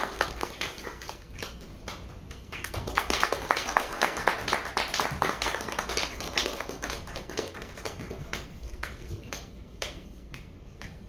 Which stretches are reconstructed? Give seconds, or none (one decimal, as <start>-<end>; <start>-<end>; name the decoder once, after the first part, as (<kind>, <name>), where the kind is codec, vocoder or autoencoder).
0.0-1.7 (codec, SNAC); 2.3-4.3; 5.2-11.1